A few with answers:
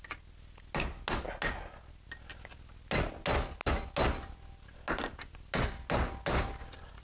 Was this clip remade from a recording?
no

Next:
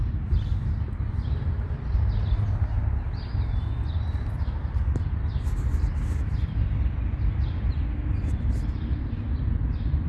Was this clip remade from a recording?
no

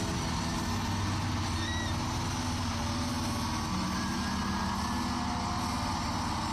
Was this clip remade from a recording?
no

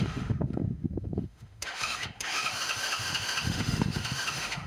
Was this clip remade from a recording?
yes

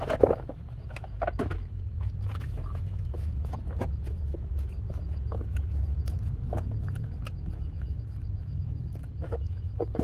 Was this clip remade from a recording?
yes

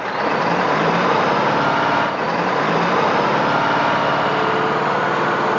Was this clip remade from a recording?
no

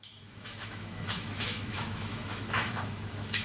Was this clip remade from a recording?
yes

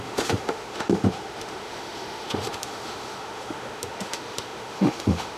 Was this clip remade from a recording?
yes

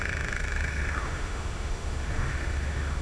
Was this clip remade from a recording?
yes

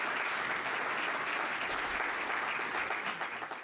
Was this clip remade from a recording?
no